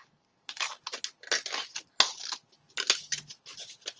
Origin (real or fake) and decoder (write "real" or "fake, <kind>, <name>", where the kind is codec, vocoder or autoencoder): real